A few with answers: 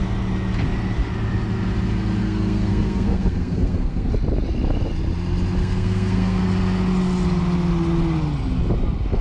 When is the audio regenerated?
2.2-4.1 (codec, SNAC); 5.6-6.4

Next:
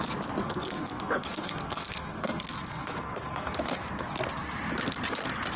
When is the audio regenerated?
0.4-3.8 (codec, SNAC)

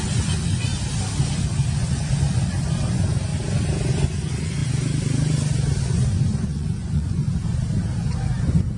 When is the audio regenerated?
0.0-0.7 (vocoder, Vocos); 1.3-3.3; 3.9-4.6; 5.8-7.3; 8.0-8.8

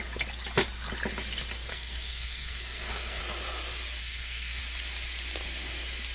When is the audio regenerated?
1.7-3.2 (codec, SNAC); 4.0-4.6

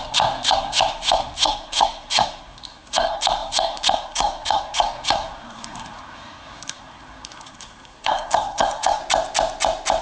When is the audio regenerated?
0.0-9.0 (codec, SNAC)

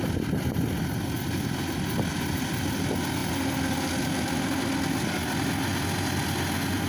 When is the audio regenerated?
none